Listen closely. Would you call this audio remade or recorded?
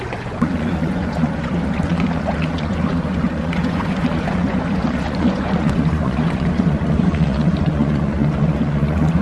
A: remade